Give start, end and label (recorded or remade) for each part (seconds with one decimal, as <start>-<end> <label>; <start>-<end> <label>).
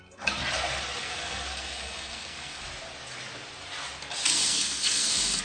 0.0-1.0 recorded; 1.0-2.6 remade; 2.6-4.3 recorded; 4.3-5.4 remade